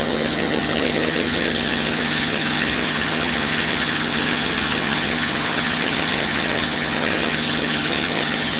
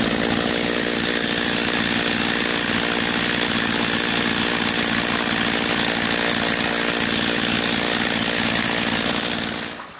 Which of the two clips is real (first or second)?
second